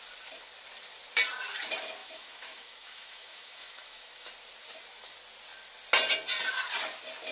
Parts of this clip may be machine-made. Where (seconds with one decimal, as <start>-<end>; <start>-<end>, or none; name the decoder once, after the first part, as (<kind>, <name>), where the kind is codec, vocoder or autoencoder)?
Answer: 2.0-4.3 (autoencoder, DAC-VAE)